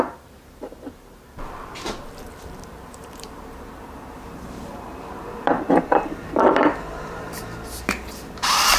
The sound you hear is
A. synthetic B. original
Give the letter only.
A